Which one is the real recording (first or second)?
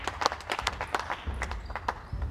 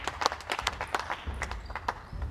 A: first